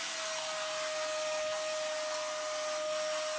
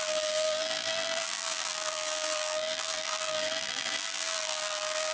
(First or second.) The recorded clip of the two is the first